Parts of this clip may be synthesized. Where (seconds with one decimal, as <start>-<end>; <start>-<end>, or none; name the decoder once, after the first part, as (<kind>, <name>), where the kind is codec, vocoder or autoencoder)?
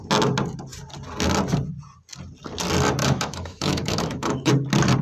3.0-4.5 (autoencoder, DAC-VAE)